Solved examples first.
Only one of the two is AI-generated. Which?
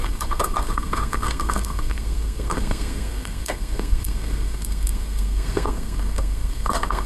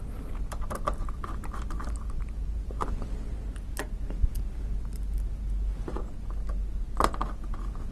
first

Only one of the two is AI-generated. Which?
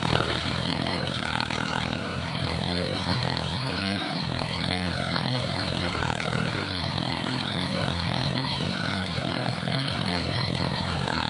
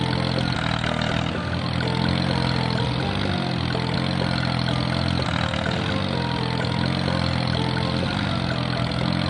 first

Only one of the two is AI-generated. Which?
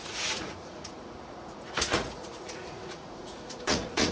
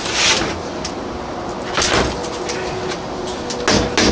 first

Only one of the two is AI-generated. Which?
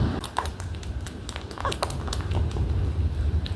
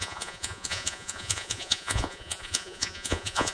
second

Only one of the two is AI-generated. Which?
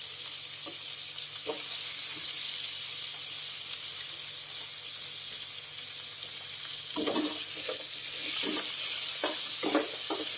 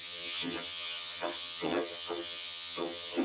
second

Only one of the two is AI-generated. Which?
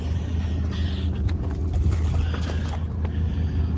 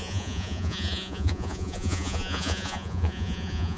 second